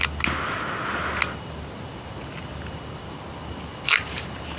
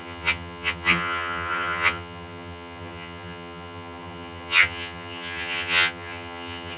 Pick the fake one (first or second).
second